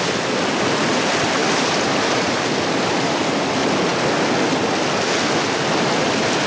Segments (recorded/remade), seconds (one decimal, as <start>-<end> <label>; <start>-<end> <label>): 0.0-1.4 recorded; 1.4-2.5 remade; 2.5-6.5 recorded